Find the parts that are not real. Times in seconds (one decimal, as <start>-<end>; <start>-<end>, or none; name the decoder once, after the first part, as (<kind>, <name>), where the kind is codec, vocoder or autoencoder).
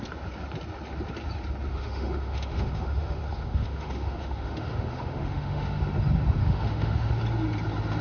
1.7-5.8 (autoencoder, DAC-VAE); 6.4-7.1